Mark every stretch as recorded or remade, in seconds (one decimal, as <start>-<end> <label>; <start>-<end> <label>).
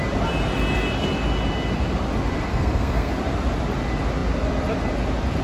0.0-2.5 recorded; 2.5-3.1 remade; 3.1-5.4 recorded